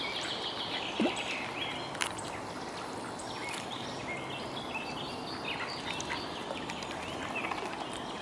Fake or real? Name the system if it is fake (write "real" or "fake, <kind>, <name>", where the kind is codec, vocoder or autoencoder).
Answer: real